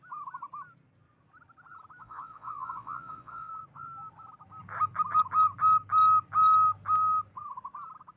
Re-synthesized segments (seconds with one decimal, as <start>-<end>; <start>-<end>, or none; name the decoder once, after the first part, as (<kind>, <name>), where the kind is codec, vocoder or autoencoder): 2.0-3.5 (vocoder, Vocos)